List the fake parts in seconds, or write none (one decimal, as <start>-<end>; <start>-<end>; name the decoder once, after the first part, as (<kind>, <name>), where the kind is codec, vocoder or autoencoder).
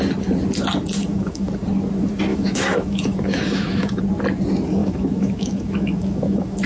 1.0-1.5 (autoencoder, DAC-VAE); 2.3-4.0; 4.8-6.7